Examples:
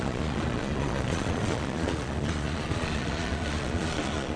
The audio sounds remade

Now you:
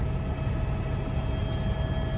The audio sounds recorded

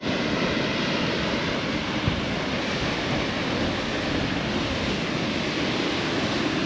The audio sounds recorded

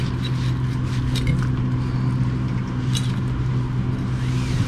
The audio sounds recorded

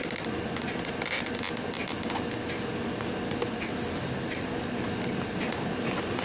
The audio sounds recorded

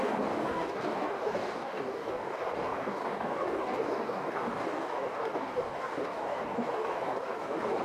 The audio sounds remade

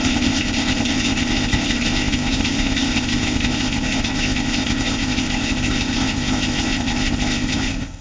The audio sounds remade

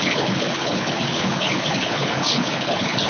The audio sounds remade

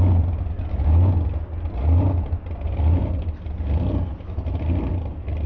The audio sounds recorded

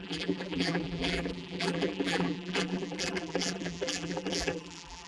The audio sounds remade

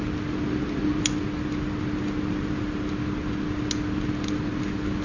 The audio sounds recorded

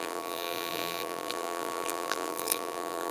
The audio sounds remade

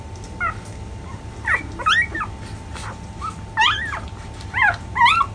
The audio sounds recorded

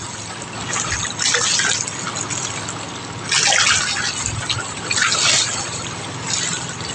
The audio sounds recorded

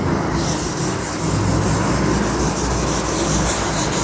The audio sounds recorded